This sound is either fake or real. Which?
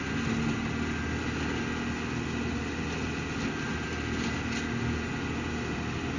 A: real